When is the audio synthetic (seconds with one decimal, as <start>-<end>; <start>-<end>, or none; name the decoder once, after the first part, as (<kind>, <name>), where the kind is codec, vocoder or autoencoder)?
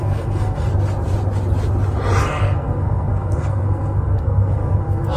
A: 0.0-0.7 (codec, SNAC); 2.2-5.2